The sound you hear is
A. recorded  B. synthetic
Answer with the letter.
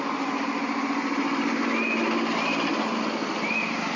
A